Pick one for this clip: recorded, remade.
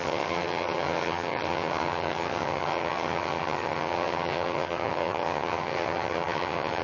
remade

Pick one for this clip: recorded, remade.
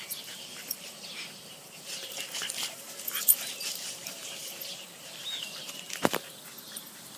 remade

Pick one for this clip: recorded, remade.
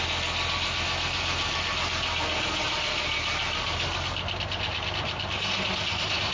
recorded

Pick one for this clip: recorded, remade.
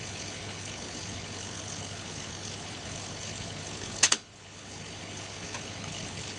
remade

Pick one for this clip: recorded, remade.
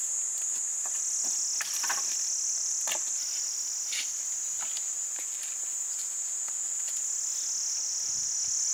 recorded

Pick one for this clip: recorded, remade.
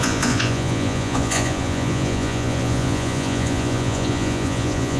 remade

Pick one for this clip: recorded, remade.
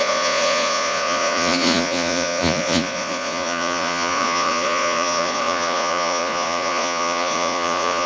remade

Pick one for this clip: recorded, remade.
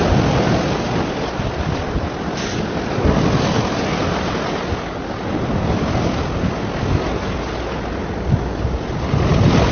recorded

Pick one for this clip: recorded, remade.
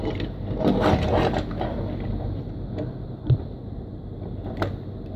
recorded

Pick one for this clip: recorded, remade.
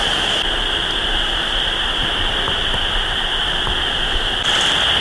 recorded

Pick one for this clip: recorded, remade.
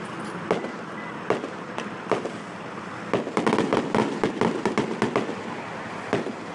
recorded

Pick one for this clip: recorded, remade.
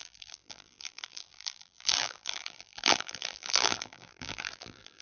remade